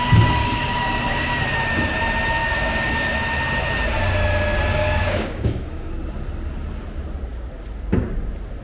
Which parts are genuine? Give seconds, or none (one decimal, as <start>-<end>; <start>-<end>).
0.0-0.4; 1.3-2.4; 3.1-4.7; 5.9-8.6

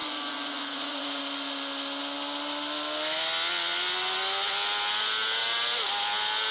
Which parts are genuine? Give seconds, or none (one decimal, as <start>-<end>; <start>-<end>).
1.2-6.5